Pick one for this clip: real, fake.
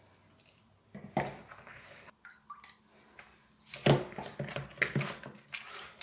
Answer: real